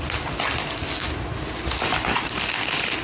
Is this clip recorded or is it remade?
recorded